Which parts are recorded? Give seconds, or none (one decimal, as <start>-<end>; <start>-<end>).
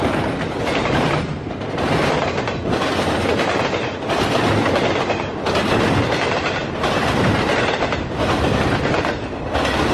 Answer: 0.0-3.3; 3.9-6.6; 8.9-9.9